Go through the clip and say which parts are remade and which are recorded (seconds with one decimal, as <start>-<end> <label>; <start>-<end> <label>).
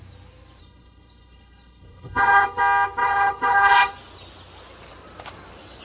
0.0-0.6 recorded; 0.6-2.6 remade; 2.6-3.0 recorded; 3.0-3.9 remade; 3.9-5.8 recorded